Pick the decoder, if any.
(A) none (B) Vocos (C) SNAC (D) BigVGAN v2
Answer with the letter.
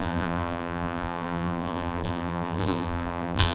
D